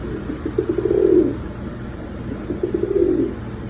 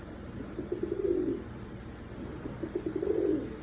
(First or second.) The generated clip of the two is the second